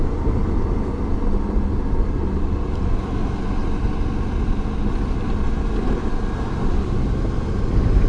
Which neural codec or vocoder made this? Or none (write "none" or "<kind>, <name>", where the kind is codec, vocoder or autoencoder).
none